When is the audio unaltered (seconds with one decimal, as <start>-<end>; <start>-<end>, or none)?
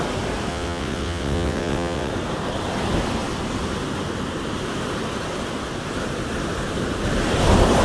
0.0-0.5; 2.1-7.8